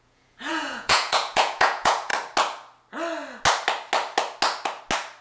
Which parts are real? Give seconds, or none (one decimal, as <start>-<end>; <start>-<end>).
2.1-5.2